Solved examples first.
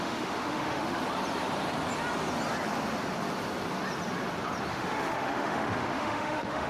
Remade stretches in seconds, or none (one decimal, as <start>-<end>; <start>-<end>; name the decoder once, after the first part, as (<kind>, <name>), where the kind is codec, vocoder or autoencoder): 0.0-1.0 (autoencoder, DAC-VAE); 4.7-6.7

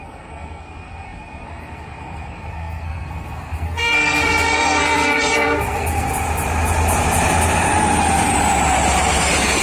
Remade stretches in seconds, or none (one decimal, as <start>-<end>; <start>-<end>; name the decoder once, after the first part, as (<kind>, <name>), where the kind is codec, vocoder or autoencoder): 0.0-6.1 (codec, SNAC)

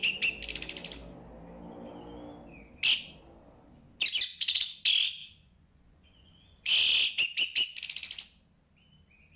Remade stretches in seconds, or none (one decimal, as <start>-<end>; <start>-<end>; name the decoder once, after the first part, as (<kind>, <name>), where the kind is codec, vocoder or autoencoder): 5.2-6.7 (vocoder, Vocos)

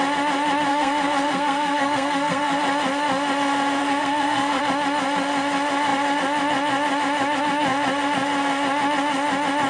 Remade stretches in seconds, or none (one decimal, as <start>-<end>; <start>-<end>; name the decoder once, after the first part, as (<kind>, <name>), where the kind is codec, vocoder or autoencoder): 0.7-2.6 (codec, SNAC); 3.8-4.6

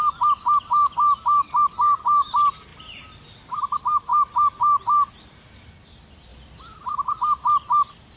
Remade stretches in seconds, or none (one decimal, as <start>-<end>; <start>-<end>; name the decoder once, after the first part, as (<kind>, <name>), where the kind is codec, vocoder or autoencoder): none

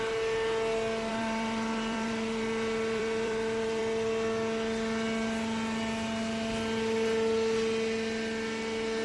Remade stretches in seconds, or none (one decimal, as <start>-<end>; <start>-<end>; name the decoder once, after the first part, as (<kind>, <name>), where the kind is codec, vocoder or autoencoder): 1.1-3.8 (vocoder, BigVGAN v2)

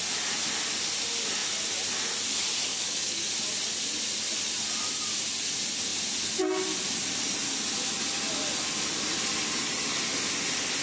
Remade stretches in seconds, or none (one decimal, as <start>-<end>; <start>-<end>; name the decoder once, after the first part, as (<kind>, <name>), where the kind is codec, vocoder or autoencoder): 2.7-3.3 (codec, DAC)